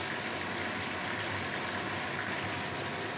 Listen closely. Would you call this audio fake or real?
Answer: real